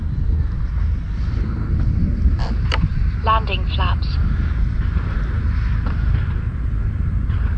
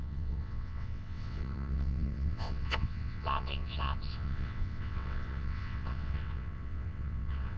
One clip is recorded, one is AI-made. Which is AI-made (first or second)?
second